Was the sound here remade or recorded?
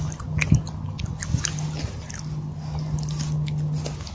recorded